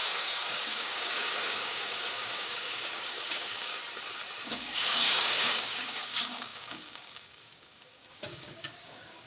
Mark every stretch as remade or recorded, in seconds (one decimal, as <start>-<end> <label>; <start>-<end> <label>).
0.0-3.8 remade; 3.8-4.4 recorded; 4.4-9.3 remade